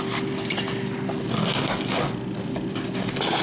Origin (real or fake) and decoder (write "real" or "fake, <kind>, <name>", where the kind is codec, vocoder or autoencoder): real